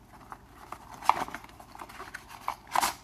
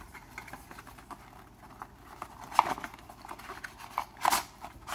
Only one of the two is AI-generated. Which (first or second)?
first